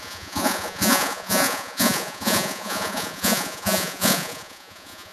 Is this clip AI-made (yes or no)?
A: yes